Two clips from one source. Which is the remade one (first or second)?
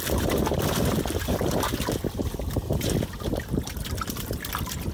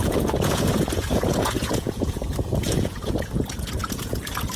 second